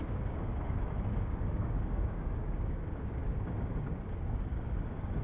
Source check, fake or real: fake